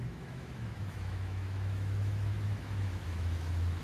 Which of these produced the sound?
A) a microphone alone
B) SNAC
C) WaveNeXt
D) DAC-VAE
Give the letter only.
D